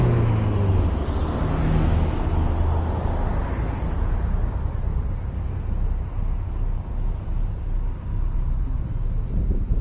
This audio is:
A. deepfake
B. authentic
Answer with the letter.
B